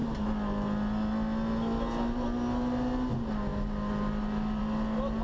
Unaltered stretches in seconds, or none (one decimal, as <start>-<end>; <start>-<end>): 0.0-5.2